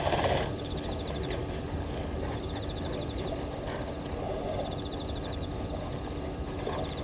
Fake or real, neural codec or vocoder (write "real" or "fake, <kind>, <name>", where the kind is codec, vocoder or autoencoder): real